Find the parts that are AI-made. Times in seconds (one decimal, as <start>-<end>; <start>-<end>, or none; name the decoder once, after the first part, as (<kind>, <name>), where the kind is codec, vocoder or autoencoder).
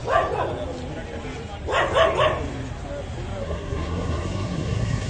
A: 3.4-5.1 (codec, SNAC)